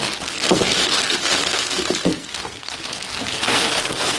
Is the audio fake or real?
fake